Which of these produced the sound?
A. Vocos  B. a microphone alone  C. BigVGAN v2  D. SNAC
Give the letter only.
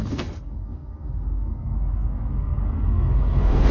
D